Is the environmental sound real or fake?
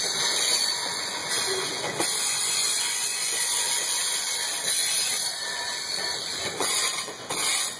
fake